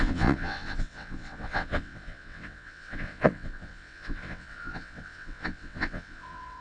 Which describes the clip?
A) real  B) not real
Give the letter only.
B